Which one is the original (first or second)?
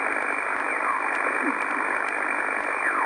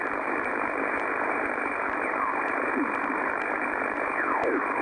first